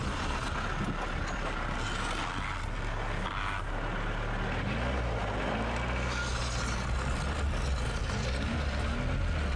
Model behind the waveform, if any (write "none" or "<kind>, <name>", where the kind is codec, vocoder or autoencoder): none